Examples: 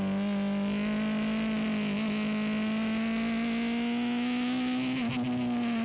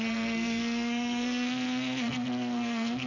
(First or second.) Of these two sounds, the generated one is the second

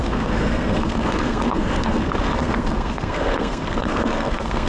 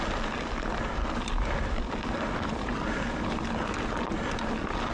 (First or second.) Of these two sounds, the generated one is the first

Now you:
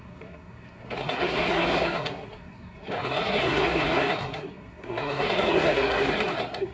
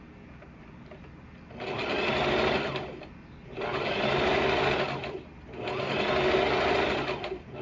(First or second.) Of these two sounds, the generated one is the first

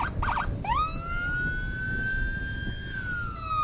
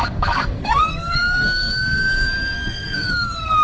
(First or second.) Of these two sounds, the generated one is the second